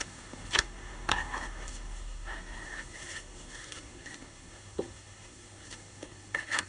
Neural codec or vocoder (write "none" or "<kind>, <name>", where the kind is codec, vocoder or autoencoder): codec, SNAC